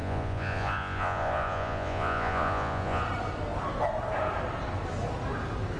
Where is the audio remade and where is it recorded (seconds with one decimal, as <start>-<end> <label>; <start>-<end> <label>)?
0.0-3.0 remade; 3.0-5.8 recorded